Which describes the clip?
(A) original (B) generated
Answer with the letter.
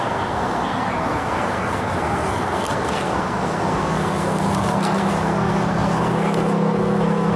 B